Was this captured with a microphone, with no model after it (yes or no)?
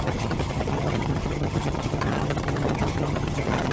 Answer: no